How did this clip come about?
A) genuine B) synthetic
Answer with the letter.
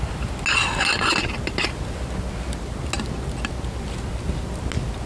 A